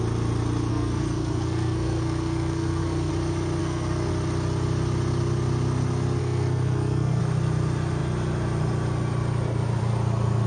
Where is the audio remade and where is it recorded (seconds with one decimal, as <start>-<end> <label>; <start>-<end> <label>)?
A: 0.0-0.7 recorded; 0.7-3.1 remade; 3.1-3.6 recorded; 3.6-4.1 remade; 4.1-6.2 recorded; 6.2-7.2 remade; 7.2-10.5 recorded